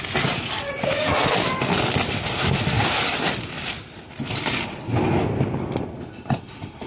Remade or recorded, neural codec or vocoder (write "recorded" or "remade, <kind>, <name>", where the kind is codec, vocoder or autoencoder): recorded